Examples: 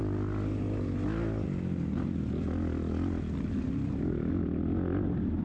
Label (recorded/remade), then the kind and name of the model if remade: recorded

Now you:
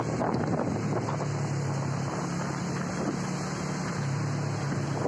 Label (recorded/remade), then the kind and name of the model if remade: recorded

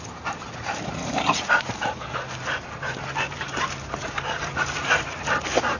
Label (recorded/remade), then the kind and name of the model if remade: remade, vocoder, BigVGAN v2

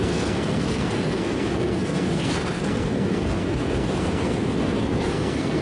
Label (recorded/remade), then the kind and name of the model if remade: remade, codec, SNAC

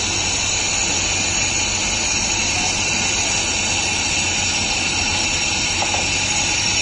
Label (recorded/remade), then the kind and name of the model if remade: recorded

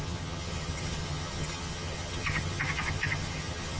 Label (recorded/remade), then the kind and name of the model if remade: remade, vocoder, HiFi-GAN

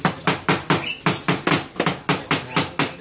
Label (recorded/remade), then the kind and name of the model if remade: recorded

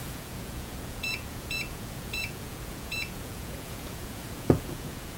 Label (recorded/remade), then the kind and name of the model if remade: remade, vocoder, Vocos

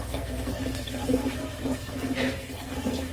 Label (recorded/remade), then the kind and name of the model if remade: remade, codec, SNAC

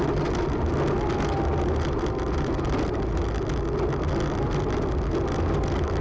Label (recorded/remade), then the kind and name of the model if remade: recorded